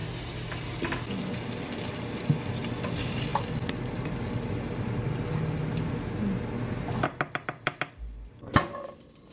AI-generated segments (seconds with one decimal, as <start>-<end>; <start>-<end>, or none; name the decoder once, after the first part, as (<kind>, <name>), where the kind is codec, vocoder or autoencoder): none